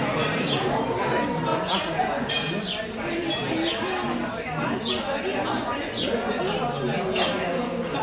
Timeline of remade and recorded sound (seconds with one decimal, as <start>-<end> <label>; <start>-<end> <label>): 0.0-1.5 recorded; 1.5-2.3 remade; 2.3-5.6 recorded; 5.6-6.3 remade; 6.3-8.0 recorded